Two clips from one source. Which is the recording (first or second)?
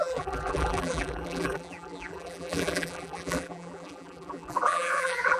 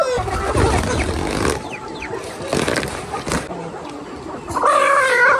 second